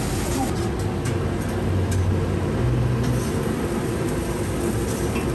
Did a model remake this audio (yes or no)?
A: no